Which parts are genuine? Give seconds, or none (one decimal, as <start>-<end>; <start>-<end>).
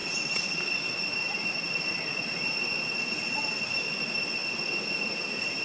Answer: 0.6-5.6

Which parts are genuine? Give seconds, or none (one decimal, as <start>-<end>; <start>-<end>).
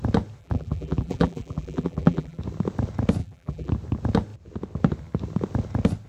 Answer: 0.0-0.4; 2.4-3.2; 3.7-6.1